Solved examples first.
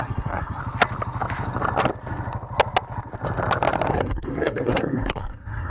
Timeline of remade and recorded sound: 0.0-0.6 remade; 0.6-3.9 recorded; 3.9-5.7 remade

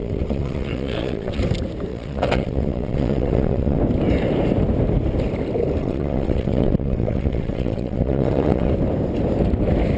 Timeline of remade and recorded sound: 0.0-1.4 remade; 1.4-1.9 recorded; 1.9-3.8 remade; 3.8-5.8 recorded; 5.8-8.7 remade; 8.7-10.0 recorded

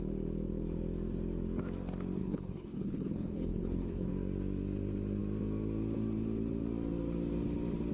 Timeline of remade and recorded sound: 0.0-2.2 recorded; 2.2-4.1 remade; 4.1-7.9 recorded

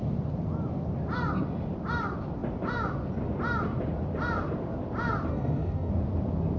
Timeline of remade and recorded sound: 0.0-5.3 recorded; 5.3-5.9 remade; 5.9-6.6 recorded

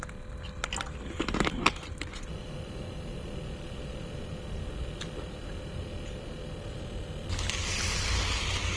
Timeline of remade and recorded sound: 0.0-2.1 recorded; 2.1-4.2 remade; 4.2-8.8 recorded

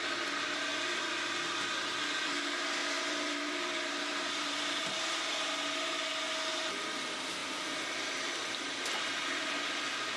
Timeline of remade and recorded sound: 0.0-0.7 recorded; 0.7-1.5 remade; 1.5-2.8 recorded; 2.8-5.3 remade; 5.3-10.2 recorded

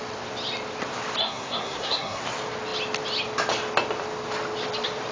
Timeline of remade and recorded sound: 0.0-1.2 recorded; 1.2-2.2 remade; 2.2-5.1 recorded